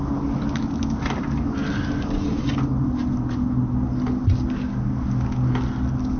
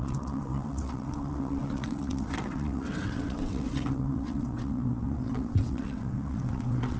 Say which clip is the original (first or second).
first